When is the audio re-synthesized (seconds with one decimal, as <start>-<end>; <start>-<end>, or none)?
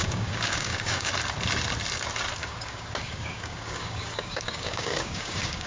0.0-1.1; 2.4-5.7